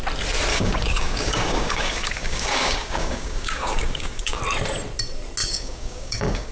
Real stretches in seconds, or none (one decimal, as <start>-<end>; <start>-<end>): 0.0-0.5; 4.4-5.4